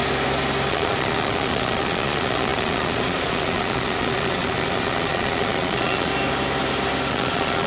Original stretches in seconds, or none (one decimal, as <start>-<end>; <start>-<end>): 0.0-0.7; 6.1-7.1